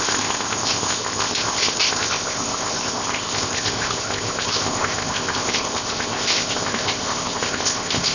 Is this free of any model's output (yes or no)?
no